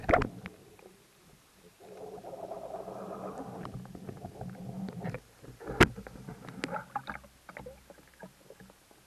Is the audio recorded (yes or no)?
yes